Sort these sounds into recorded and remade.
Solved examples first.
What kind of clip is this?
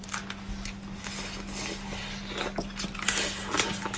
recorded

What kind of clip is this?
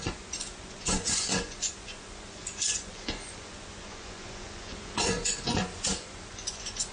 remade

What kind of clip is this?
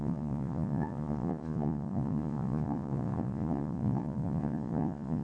remade